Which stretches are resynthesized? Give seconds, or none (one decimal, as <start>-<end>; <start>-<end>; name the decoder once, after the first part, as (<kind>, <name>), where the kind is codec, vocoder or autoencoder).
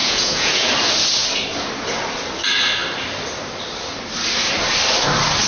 0.0-0.7 (vocoder, Vocos)